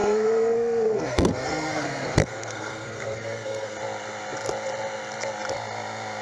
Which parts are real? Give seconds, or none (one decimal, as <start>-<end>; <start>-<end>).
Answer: 3.7-6.2